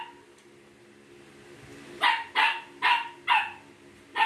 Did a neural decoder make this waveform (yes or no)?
no